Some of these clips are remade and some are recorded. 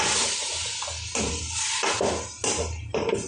recorded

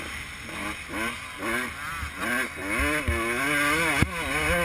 recorded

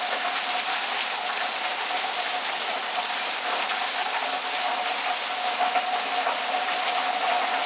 recorded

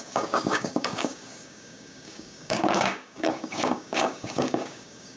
remade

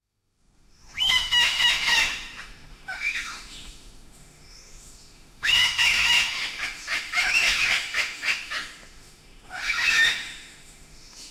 remade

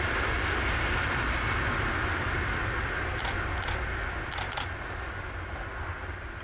recorded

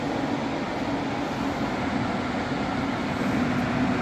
recorded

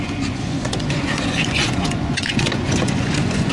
remade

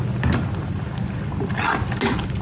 recorded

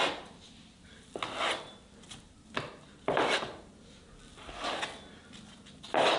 recorded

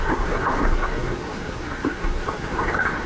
remade